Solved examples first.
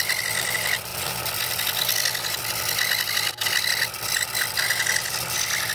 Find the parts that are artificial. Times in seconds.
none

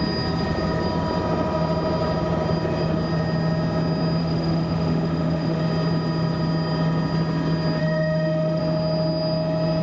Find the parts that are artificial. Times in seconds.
4.2-5.6 (autoencoder, DAC-VAE); 7.8-8.6

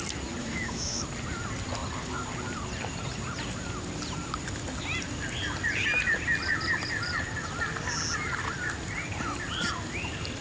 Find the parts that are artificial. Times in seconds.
0.4-1.0 (autoencoder, DAC-VAE)